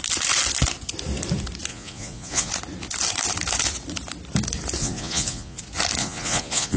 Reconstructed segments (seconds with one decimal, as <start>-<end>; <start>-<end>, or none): 1.7-2.5; 4.8-5.6; 6.0-6.8

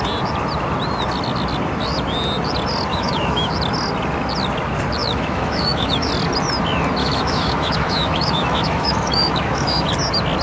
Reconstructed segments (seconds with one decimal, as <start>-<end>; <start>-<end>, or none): 2.9-3.5; 5.0-6.1; 7.0-9.9

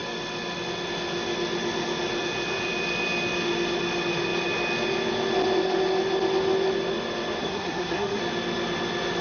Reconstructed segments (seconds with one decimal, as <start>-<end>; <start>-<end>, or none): 7.4-8.2

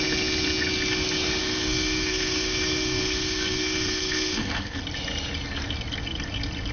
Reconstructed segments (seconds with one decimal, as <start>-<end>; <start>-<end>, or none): 1.4-4.8

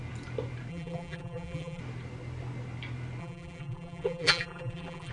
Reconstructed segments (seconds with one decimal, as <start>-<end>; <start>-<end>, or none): 0.7-1.8; 3.2-5.1

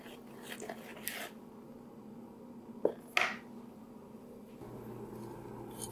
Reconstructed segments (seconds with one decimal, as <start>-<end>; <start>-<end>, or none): none

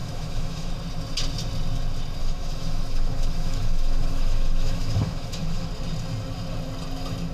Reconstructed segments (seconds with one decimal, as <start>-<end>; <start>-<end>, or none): 0.0-0.7; 2.2-5.7